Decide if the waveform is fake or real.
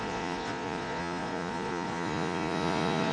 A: fake